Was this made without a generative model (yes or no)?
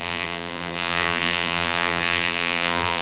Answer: no